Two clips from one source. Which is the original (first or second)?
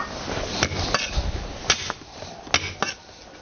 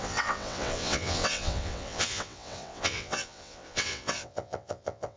first